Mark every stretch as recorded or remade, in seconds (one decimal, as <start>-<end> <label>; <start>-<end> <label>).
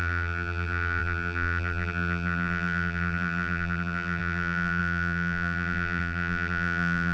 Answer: 0.0-7.1 remade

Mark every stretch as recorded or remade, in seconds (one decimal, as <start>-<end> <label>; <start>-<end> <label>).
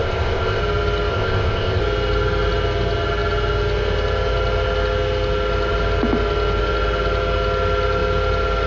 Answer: 0.0-0.6 remade; 0.6-1.1 recorded; 1.1-1.8 remade; 1.8-8.7 recorded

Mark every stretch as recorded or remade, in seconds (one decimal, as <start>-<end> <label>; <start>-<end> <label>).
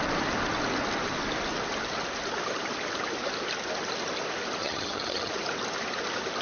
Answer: 0.0-4.6 recorded; 4.6-5.3 remade; 5.3-6.4 recorded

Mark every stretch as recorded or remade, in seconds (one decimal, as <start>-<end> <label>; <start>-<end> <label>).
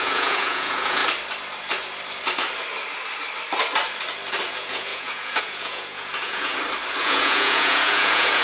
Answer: 0.0-1.0 remade; 1.0-4.5 recorded; 4.5-6.5 remade; 6.5-7.0 recorded; 7.0-8.4 remade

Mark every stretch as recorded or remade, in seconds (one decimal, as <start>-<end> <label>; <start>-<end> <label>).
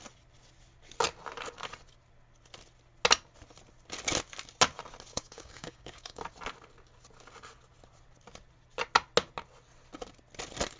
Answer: 0.0-5.1 recorded; 5.1-6.2 remade; 6.2-10.8 recorded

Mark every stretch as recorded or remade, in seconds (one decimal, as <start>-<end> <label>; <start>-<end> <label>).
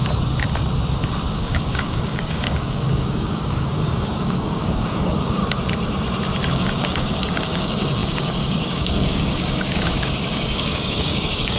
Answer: 0.0-1.3 recorded; 1.3-5.4 remade; 5.4-6.5 recorded; 6.5-11.6 remade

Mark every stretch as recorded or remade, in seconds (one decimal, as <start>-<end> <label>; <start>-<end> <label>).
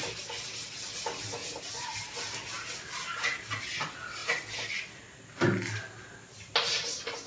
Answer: 0.0-7.3 recorded